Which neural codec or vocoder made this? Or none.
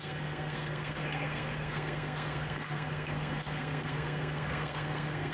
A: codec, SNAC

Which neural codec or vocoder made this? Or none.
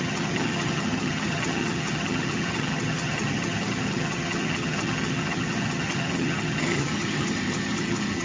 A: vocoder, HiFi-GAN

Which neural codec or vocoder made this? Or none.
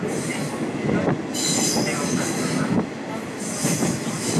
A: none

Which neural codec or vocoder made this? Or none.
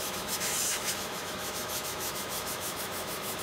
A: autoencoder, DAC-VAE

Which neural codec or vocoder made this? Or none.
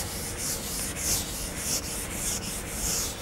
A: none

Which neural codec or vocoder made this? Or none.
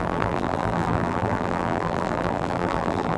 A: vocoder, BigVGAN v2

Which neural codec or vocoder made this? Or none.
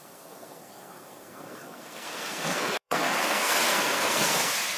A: codec, SNAC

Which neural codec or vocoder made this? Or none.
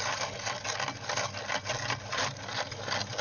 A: none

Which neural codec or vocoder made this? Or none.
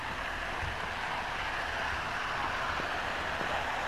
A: none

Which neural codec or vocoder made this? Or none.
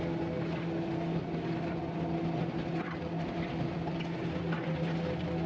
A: none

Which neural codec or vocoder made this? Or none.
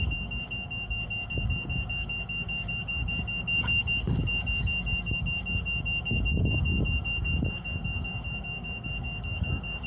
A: codec, DAC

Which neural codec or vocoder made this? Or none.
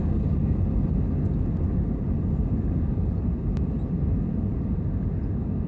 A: none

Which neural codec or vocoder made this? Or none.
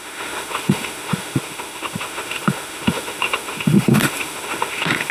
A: autoencoder, DAC-VAE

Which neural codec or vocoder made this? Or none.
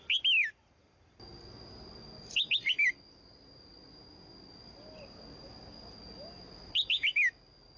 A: none